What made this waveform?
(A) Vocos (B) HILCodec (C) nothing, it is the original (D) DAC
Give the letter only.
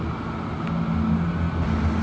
C